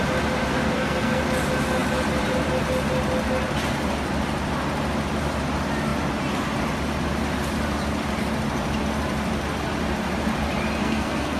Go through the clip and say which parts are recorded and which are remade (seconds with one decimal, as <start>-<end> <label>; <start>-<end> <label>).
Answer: 0.0-0.5 recorded; 0.5-1.2 remade; 1.2-10.8 recorded; 10.8-11.4 remade